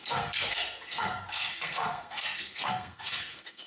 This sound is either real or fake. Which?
fake